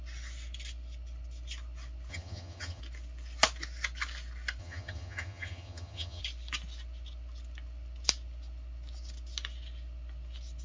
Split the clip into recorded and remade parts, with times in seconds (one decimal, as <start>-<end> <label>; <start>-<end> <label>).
0.0-2.1 recorded; 2.1-2.8 remade; 2.8-4.6 recorded; 4.6-6.2 remade; 6.2-10.6 recorded